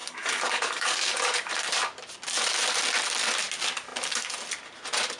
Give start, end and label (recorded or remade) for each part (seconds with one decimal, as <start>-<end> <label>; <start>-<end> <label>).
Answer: 0.0-1.5 remade; 1.5-5.2 recorded